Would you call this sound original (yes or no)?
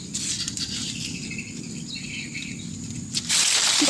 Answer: yes